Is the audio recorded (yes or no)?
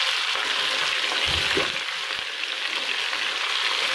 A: yes